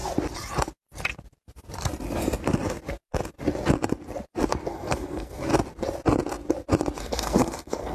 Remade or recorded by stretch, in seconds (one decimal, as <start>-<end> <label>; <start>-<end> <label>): 0.0-4.7 recorded; 4.7-5.5 remade; 5.5-7.0 recorded; 7.0-7.9 remade